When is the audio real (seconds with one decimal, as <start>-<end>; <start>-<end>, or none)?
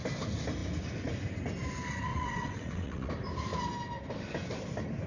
0.0-2.1; 3.1-5.1